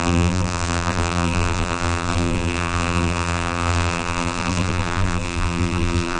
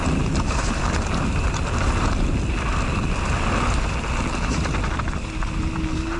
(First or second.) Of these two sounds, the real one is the second